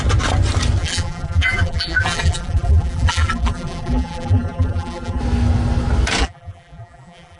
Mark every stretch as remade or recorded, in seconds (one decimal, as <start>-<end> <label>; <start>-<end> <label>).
0.0-0.8 recorded; 0.8-5.2 remade; 5.2-6.2 recorded; 6.2-7.4 remade